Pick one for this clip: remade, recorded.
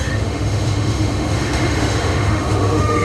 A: remade